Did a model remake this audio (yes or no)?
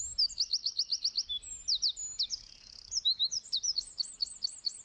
no